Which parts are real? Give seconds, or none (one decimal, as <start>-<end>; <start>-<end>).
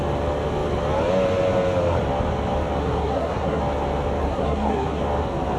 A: 0.0-2.8; 3.6-4.2; 5.0-5.6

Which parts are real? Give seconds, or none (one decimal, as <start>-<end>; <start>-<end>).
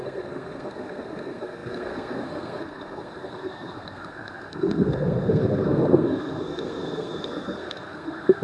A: none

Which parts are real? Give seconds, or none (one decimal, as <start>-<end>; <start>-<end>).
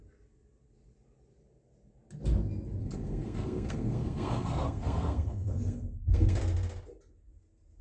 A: 0.0-2.8; 6.4-7.8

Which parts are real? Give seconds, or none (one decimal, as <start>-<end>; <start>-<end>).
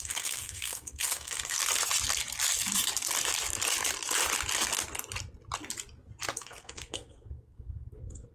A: 1.6-6.4